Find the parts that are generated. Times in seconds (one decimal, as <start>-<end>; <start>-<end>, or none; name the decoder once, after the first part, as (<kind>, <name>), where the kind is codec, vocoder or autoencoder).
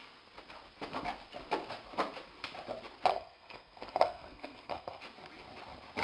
3.1-5.0 (codec, SNAC)